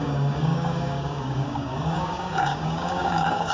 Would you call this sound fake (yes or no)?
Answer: yes